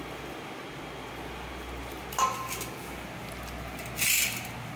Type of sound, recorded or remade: recorded